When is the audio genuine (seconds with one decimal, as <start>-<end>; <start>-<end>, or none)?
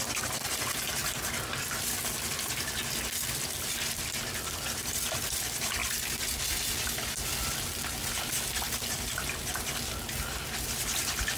0.0-11.4